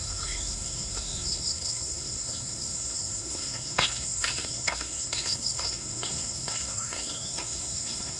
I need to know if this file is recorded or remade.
remade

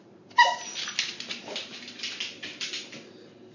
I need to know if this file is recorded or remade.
recorded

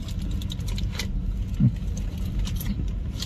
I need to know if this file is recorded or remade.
recorded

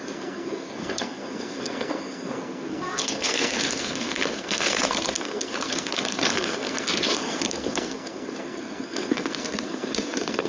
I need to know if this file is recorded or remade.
remade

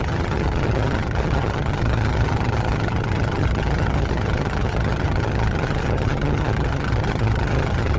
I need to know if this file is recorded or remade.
remade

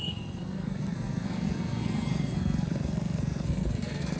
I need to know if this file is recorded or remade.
remade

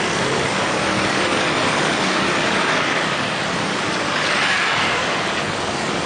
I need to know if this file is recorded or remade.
remade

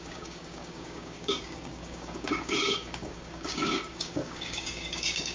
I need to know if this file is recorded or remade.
remade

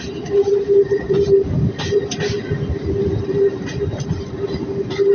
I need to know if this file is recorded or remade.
recorded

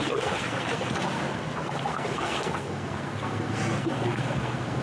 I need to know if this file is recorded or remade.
remade